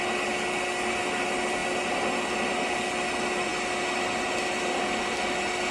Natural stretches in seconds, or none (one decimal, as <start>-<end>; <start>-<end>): 0.0-5.7